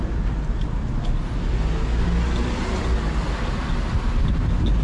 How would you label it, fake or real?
real